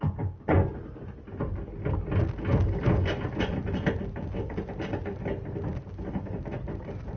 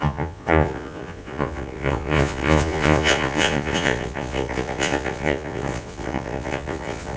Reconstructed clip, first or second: second